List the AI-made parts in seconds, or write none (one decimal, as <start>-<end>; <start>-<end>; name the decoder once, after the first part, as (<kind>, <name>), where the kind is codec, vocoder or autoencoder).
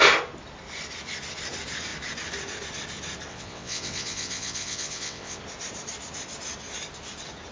3.3-5.4 (vocoder, WaveNeXt)